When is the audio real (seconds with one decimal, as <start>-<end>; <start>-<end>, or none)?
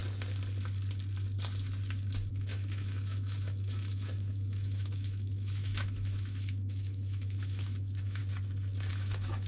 0.0-2.3; 8.2-8.9